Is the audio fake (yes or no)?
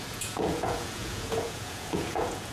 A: yes